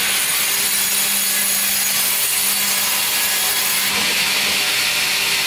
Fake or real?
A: real